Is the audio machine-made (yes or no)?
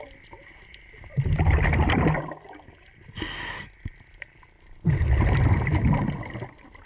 no